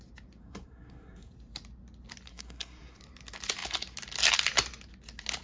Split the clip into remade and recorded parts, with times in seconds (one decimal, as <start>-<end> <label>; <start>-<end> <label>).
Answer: 0.0-0.4 recorded; 0.4-1.3 remade; 1.3-2.3 recorded; 2.3-3.0 remade; 3.0-5.4 recorded